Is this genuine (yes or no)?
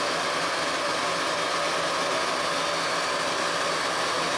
yes